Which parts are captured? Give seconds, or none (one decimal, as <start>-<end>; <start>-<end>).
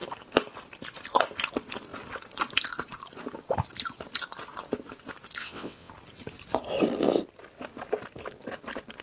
0.0-5.4; 5.9-9.0